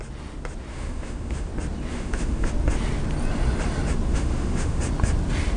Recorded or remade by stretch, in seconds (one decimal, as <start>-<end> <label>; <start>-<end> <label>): 0.0-0.7 recorded; 0.7-1.5 remade; 1.5-1.9 recorded; 1.9-2.5 remade; 2.5-4.1 recorded; 4.1-4.8 remade; 4.8-5.6 recorded